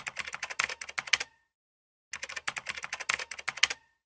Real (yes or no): yes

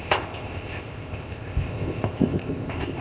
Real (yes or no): no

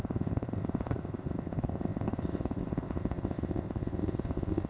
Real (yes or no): no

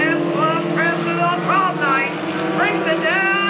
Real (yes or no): yes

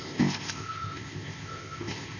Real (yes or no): no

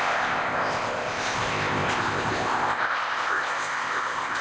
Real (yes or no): no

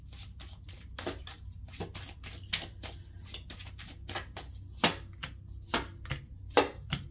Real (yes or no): yes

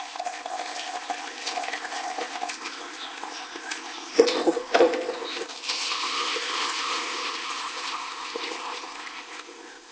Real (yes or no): no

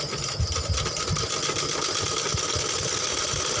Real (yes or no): yes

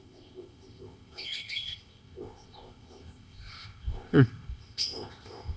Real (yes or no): no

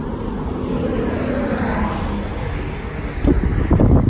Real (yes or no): yes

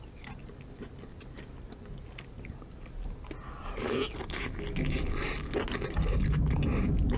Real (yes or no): yes